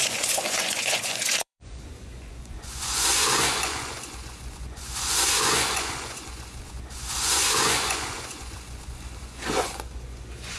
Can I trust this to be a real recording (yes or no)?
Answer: no